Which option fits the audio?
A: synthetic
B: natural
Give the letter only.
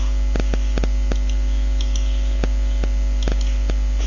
B